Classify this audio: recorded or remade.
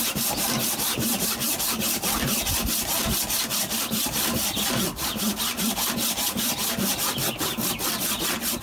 recorded